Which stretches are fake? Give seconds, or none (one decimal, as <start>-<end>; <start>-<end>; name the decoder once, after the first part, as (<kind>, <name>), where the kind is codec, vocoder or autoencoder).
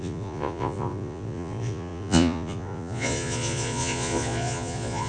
0.0-5.1 (vocoder, Vocos)